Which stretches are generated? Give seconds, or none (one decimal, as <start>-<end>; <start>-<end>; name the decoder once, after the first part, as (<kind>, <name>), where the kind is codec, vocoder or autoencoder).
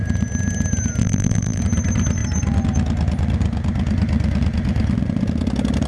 1.0-1.6 (vocoder, BigVGAN v2)